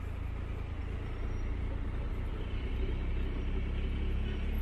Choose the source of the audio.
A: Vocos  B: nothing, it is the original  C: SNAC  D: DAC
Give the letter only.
B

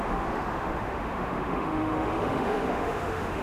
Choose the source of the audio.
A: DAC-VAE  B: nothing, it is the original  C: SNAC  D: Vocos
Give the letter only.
A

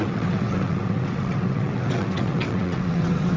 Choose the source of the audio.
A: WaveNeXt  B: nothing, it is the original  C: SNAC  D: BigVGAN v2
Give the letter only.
A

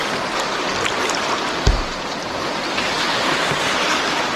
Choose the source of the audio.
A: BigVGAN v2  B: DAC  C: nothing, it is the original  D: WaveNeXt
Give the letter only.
C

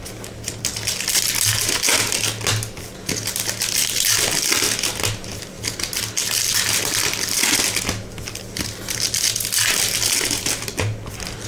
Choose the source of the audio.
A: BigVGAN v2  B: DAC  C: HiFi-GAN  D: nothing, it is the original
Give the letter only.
D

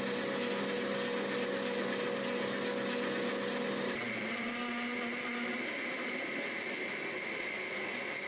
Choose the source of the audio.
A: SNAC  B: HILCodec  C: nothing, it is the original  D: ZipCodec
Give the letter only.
C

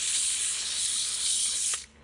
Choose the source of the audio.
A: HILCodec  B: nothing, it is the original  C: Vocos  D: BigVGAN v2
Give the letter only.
A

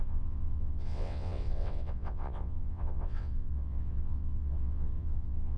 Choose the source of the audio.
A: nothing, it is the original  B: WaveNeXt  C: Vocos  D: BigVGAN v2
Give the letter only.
B